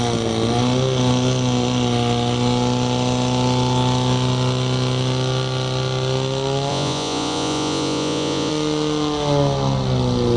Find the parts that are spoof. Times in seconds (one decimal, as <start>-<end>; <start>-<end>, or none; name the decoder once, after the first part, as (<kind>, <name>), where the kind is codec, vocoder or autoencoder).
6.7-8.5 (vocoder, Vocos)